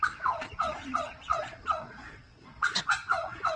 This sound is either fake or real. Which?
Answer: fake